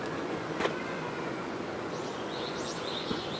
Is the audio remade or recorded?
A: remade